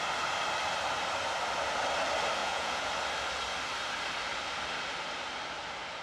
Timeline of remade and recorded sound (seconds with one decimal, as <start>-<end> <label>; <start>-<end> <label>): 0.0-2.4 recorded; 2.4-2.9 remade; 2.9-6.0 recorded